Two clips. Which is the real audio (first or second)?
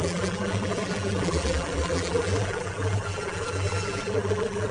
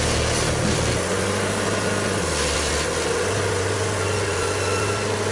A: second